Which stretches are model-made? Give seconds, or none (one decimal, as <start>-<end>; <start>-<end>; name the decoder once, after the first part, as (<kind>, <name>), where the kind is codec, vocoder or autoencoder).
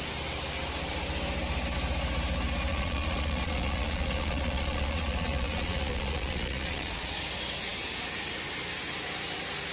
2.7-7.2 (vocoder, Vocos)